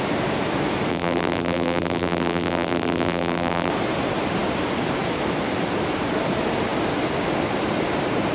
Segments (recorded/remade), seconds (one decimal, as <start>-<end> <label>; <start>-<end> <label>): 0.0-0.9 recorded; 0.9-3.7 remade; 3.7-8.3 recorded